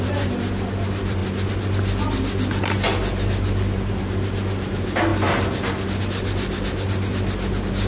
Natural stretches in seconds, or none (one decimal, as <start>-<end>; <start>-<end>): 0.0-7.9